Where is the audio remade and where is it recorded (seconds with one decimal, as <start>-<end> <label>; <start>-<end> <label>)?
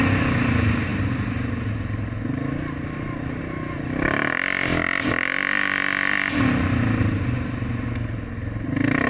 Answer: 0.0-9.1 recorded